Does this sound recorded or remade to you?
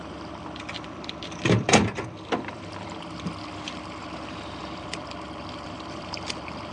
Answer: remade